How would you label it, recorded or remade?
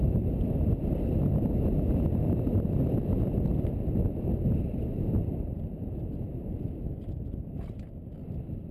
recorded